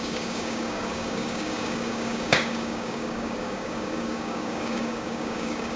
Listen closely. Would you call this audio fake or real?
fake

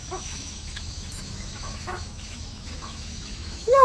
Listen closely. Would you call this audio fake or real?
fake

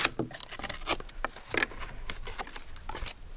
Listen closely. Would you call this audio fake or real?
real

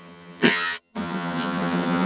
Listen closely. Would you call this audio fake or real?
fake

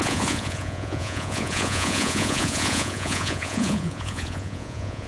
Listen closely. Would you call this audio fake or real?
fake